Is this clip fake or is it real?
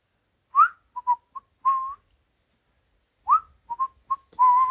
real